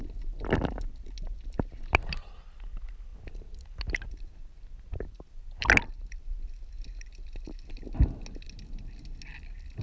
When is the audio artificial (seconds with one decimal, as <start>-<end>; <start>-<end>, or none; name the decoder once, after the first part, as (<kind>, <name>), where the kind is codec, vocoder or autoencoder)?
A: none